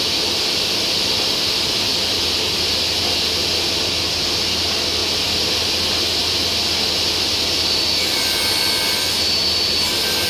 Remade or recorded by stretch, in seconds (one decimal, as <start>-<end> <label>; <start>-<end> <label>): 0.0-10.3 recorded